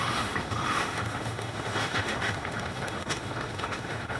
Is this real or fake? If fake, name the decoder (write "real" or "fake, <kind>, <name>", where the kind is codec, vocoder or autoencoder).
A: fake, autoencoder, DAC-VAE